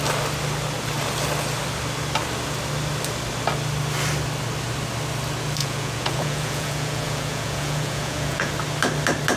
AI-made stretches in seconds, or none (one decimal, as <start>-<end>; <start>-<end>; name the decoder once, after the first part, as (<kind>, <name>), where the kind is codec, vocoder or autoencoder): 5.6-8.5 (vocoder, Vocos)